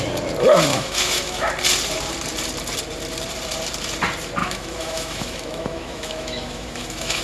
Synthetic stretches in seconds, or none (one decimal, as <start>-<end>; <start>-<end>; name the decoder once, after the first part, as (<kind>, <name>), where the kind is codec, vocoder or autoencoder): 0.7-1.5 (autoencoder, DAC-VAE); 4.4-7.2